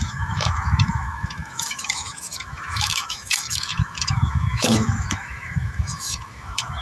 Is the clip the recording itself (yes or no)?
no